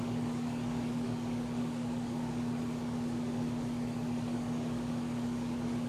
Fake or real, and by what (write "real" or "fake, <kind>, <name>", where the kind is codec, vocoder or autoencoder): fake, codec, DAC